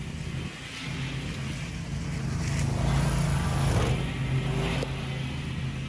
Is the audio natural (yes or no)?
yes